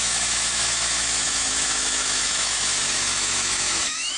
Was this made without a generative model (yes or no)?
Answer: no